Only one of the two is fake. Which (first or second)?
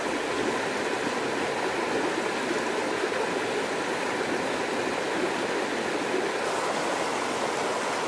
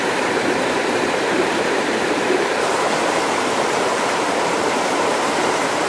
second